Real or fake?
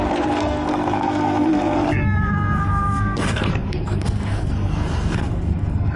fake